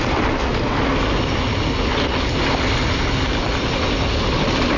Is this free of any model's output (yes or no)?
yes